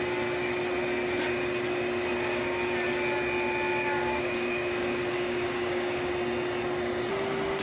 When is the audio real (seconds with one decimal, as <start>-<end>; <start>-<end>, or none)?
0.0-3.7; 6.1-7.6